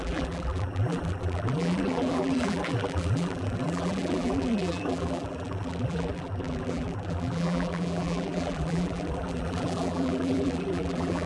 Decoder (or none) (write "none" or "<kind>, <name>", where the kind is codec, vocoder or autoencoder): vocoder, BigVGAN v2